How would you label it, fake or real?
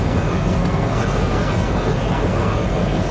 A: fake